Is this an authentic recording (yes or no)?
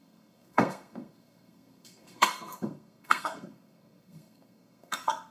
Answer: no